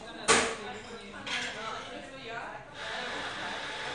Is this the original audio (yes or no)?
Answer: yes